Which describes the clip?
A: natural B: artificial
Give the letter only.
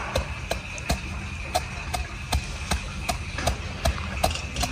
A